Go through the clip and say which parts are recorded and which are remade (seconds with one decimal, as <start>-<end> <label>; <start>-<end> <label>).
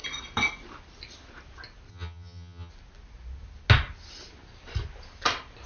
0.0-1.9 recorded; 1.9-2.7 remade; 2.7-5.7 recorded